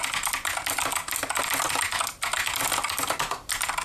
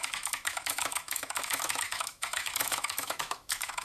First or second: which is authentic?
first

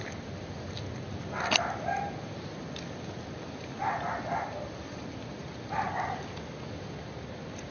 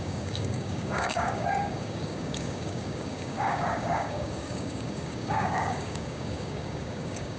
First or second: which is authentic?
first